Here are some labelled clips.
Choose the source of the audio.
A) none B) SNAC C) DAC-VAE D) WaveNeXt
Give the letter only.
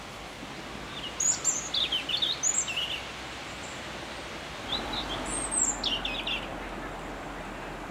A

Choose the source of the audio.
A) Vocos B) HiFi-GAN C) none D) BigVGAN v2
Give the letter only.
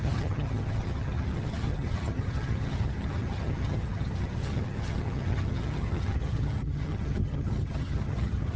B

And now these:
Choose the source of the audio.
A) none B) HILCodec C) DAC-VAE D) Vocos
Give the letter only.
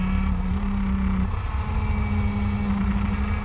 A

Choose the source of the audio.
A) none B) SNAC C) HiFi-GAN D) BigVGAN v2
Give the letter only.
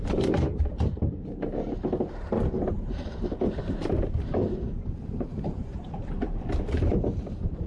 D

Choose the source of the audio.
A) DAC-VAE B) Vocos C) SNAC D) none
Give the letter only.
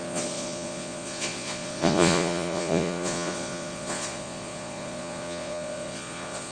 B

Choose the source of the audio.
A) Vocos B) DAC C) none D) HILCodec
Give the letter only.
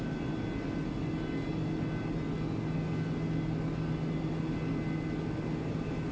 C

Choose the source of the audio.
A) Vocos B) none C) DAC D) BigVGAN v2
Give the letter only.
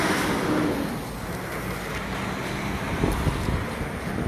B